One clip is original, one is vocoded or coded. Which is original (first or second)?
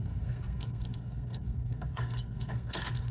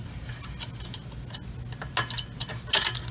second